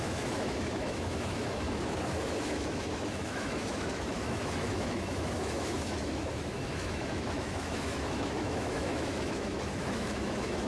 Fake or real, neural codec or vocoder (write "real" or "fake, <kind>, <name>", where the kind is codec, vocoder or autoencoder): fake, autoencoder, DAC-VAE